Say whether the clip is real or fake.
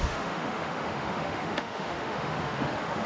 fake